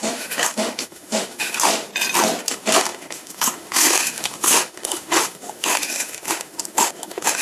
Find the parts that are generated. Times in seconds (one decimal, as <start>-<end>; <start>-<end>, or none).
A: 0.0-1.9; 2.4-7.4

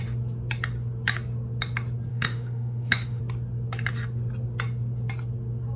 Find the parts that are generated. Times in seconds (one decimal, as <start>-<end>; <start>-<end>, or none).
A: 2.1-3.2

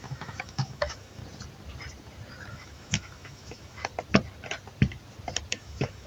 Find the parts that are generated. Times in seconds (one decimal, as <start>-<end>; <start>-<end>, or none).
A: 0.0-1.2; 2.5-3.9; 5.5-6.1